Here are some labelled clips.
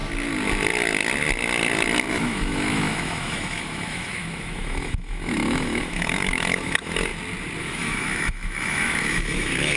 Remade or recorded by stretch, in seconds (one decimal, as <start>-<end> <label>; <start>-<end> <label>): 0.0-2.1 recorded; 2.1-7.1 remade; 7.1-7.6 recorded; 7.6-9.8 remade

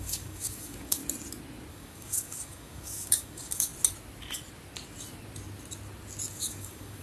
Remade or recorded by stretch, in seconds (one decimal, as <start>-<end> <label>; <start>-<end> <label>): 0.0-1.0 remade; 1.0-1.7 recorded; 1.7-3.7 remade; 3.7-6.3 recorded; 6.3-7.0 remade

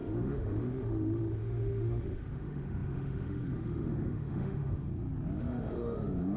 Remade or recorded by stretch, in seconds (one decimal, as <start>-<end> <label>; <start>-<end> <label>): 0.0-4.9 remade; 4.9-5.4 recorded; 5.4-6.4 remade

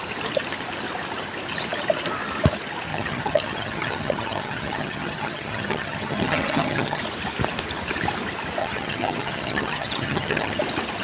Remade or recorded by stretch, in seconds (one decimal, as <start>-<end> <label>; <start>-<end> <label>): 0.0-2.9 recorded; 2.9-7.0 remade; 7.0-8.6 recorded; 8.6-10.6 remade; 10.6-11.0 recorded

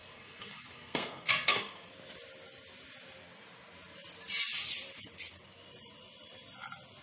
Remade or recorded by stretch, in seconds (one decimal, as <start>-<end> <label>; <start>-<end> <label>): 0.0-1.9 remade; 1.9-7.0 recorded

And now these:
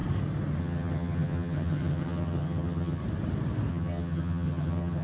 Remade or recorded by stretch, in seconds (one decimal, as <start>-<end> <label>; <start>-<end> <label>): 0.0-0.6 recorded; 0.6-3.0 remade; 3.0-3.7 recorded; 3.7-5.0 remade

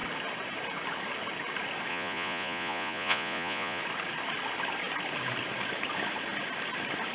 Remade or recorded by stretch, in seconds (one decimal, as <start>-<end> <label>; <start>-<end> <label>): 0.0-1.9 recorded; 1.9-3.8 remade; 3.8-7.1 recorded

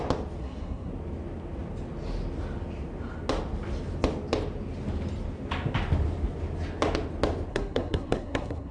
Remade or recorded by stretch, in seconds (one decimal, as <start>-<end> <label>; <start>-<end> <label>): 0.0-0.4 recorded; 0.4-0.9 remade; 0.9-7.5 recorded; 7.5-8.7 remade